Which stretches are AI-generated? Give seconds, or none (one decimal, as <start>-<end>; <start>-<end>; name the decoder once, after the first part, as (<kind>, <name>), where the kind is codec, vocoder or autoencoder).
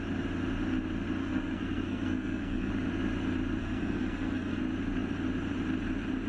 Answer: 1.2-2.7 (codec, SNAC); 3.6-4.6